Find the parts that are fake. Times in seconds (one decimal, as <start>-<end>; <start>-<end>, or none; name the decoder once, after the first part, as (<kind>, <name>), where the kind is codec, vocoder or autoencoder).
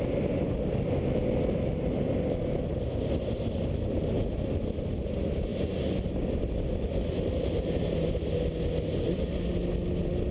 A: none